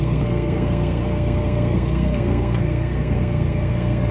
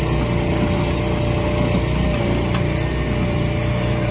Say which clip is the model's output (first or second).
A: first